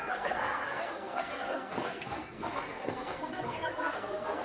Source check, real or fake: fake